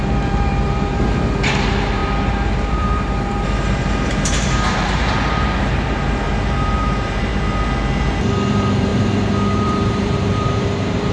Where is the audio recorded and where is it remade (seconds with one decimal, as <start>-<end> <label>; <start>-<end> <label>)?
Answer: 0.0-7.3 remade; 7.3-8.5 recorded; 8.5-11.1 remade